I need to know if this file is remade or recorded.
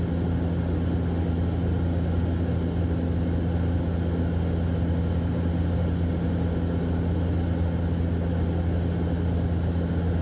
recorded